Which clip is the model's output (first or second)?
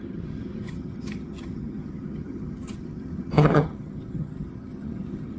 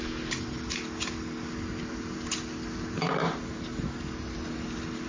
first